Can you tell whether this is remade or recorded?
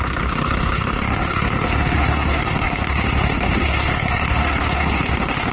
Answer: remade